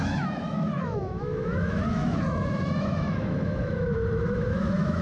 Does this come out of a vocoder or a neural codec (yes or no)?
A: yes